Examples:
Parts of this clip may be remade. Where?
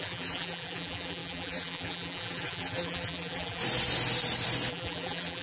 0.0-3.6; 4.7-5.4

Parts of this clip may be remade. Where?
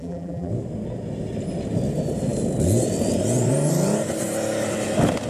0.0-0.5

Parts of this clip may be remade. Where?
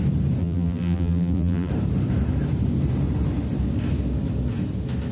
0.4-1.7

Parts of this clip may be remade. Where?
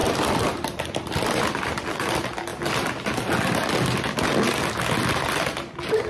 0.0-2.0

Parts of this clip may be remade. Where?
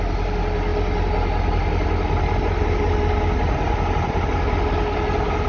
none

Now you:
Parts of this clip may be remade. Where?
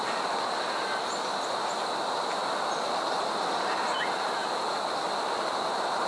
4.4-5.1